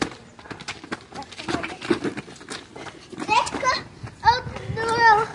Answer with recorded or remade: recorded